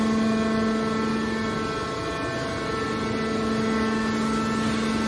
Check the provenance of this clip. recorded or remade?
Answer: recorded